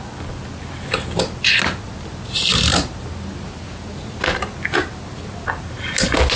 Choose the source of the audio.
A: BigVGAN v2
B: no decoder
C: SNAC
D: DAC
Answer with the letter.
B